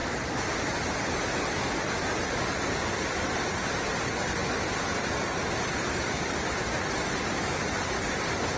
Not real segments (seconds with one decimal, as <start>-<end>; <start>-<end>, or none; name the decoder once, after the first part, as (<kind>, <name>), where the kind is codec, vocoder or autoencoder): none